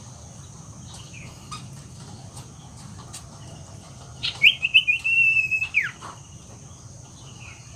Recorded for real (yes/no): yes